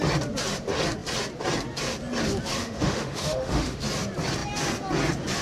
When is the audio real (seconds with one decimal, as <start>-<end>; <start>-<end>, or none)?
0.0-2.6; 3.8-5.4